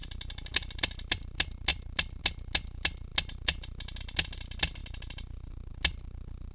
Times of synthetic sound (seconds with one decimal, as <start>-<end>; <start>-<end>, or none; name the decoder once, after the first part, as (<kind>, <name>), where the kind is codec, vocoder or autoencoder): none

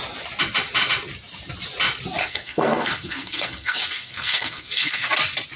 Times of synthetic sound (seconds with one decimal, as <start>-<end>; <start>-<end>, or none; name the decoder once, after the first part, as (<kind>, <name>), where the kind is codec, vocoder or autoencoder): 2.2-5.1 (codec, SNAC)

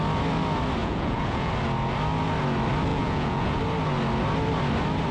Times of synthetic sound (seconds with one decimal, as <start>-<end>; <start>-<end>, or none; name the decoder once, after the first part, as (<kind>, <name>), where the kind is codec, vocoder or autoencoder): 0.8-1.5 (vocoder, Vocos); 2.9-3.6

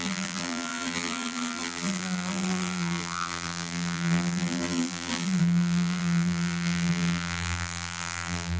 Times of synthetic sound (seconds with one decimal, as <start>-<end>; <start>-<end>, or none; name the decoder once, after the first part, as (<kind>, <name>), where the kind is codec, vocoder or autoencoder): 0.0-8.6 (vocoder, BigVGAN v2)

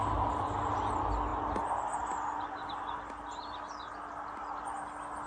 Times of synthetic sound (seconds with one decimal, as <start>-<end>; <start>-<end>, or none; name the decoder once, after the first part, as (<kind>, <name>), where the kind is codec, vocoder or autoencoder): none

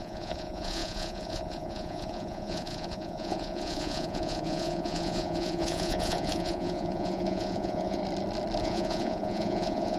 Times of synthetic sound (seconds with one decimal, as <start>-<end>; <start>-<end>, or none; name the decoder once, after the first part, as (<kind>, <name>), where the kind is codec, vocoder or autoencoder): 0.0-8.0 (vocoder, Vocos); 8.6-10.0

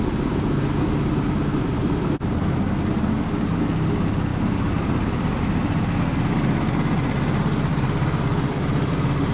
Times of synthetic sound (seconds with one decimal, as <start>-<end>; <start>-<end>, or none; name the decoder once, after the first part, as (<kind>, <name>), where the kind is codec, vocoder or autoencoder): 1.8-2.4 (vocoder, BigVGAN v2); 4.3-5.6; 7.7-8.9